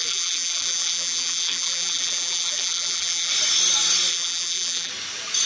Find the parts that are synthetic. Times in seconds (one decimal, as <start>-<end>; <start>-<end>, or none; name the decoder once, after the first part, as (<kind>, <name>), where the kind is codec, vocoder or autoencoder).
0.0-3.3 (vocoder, BigVGAN v2); 4.1-4.9